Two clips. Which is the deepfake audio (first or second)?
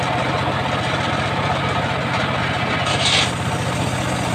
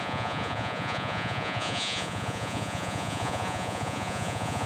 second